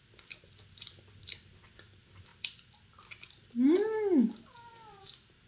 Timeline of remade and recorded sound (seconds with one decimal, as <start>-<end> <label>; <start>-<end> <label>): 0.0-5.5 recorded